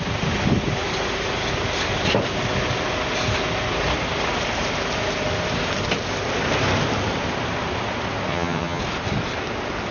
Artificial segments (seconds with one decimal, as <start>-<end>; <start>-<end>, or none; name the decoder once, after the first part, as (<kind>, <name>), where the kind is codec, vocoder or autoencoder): 8.3-8.8 (vocoder, HiFi-GAN)